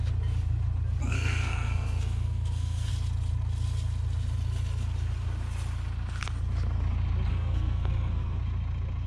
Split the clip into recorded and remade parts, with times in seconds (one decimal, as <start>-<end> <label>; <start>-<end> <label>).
0.0-1.0 recorded; 1.0-2.9 remade; 2.9-7.3 recorded; 7.3-8.4 remade; 8.4-9.1 recorded